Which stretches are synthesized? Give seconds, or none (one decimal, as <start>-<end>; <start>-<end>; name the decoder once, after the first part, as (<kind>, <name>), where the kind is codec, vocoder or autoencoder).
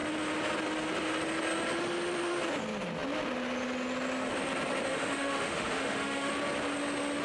4.9-6.3 (autoencoder, DAC-VAE)